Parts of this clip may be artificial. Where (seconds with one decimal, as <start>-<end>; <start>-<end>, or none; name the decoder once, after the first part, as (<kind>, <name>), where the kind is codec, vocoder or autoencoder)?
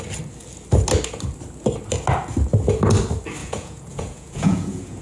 3.4-5.0 (vocoder, Vocos)